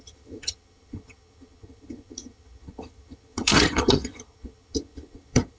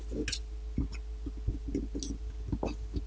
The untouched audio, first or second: second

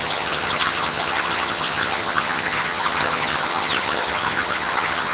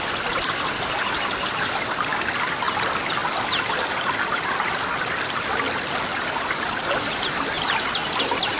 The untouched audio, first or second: second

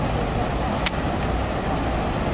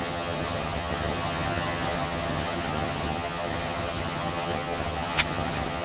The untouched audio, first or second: first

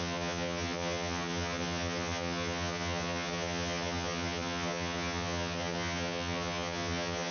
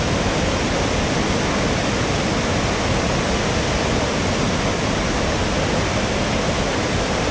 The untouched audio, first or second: second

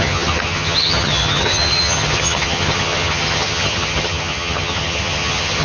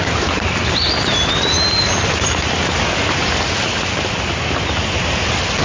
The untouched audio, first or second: second